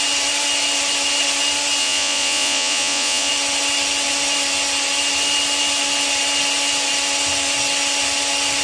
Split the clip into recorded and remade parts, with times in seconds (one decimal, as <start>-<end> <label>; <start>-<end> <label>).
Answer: 0.0-1.8 recorded; 1.8-3.3 remade; 3.3-8.6 recorded